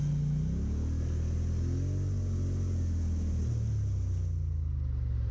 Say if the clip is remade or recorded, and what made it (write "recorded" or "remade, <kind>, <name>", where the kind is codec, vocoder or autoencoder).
recorded